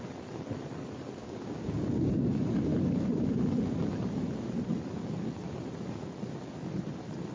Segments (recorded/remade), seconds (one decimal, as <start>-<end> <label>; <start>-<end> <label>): 0.0-1.2 recorded; 1.2-2.1 remade; 2.1-7.3 recorded